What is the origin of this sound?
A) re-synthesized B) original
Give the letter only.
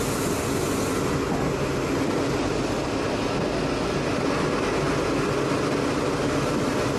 B